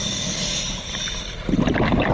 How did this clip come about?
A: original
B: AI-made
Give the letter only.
A